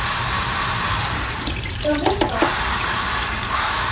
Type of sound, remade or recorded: remade